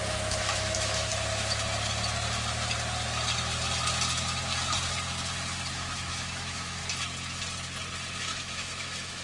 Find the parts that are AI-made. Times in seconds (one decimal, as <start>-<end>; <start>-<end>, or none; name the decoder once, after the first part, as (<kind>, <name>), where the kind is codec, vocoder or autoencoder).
0.0-1.1 (autoencoder, DAC-VAE); 5.7-6.8; 8.2-9.2